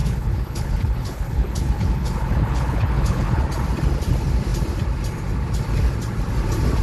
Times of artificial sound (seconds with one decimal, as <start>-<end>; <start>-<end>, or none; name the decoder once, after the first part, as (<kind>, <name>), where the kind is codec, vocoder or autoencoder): 0.0-3.4 (codec, HILCodec)

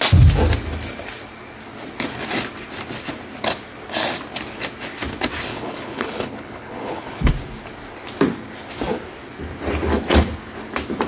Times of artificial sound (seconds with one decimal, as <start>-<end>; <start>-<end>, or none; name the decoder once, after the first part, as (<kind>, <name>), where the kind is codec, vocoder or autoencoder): 5.5-7.3 (codec, HILCodec)

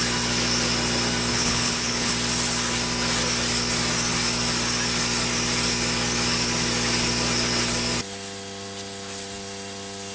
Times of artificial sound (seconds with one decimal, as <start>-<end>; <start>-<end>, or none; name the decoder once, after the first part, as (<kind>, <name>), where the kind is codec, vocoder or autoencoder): 1.3-2.1 (codec, HILCodec)

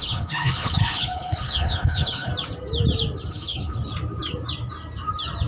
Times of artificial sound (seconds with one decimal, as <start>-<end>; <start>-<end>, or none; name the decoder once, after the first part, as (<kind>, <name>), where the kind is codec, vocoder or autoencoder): 0.0-2.3 (codec, HILCodec); 3.3-3.8

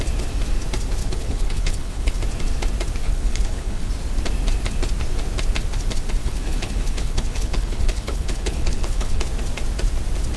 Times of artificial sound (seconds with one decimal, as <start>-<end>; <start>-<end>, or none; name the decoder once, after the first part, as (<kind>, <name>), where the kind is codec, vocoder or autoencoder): 1.0-2.2 (codec, HILCodec); 3.0-3.9; 6.2-9.2

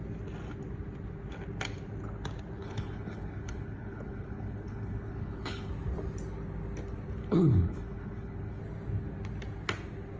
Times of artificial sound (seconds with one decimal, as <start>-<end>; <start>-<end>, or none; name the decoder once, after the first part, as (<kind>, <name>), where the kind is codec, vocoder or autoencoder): 2.6-5.7 (codec, HILCodec); 7.2-8.6

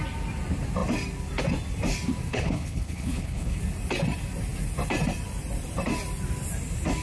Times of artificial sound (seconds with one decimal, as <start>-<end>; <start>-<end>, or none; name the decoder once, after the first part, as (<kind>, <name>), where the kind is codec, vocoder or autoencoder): 2.3-3.6 (codec, HILCodec)